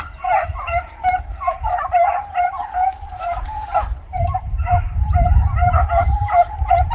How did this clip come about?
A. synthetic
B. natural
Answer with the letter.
A